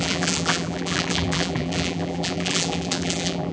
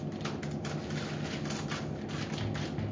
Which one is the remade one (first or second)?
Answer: first